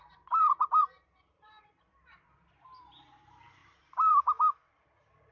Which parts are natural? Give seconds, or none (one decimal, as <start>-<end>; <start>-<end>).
1.9-3.6; 4.4-5.3

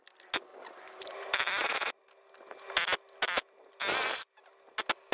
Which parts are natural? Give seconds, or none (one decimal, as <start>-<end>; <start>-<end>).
0.0-0.5; 1.9-5.1

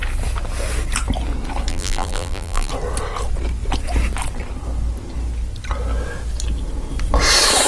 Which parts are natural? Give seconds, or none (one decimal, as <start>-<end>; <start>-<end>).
0.0-1.7; 2.7-7.7

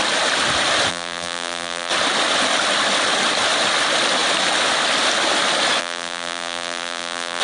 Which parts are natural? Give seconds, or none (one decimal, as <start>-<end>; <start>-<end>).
0.0-0.9; 1.9-5.8

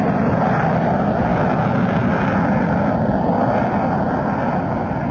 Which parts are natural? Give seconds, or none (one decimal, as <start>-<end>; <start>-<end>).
0.0-5.1

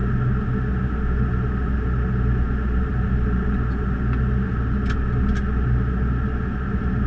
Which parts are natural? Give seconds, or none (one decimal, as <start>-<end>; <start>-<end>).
0.0-7.1

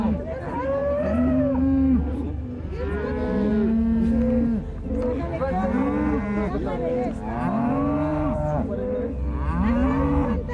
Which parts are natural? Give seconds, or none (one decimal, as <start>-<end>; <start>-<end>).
0.0-0.8; 2.7-8.1; 9.0-10.5

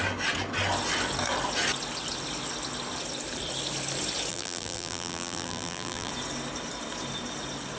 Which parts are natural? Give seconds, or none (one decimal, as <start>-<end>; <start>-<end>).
0.0-4.3; 6.1-7.8